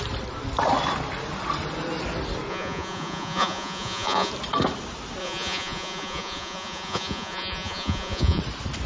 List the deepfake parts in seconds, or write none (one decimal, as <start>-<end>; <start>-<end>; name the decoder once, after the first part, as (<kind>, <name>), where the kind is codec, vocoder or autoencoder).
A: 2.5-4.3 (vocoder, Vocos); 5.2-8.4